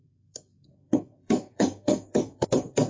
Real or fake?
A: fake